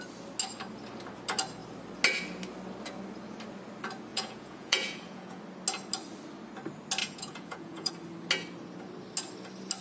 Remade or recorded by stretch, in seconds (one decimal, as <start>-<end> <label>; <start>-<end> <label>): 0.0-4.1 recorded; 4.1-5.4 remade; 5.4-7.0 recorded; 7.0-7.9 remade; 7.9-9.8 recorded